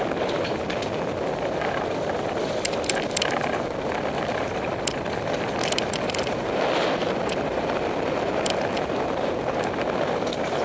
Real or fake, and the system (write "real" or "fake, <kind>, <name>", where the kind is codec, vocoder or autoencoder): fake, vocoder, BigVGAN v2